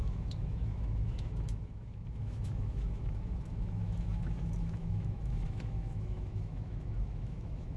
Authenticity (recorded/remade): remade